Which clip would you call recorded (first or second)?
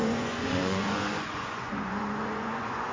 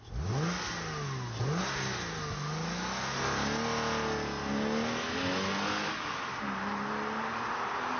second